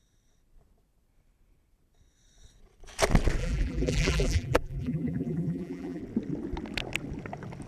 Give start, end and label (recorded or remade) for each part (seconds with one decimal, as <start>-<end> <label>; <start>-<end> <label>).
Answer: 0.0-3.4 recorded; 3.4-6.0 remade; 6.0-7.7 recorded